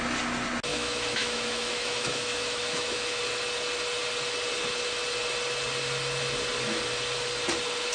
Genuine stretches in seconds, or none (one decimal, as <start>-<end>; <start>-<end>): 0.0-0.7; 3.2-7.9